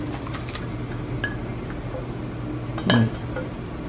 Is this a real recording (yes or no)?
yes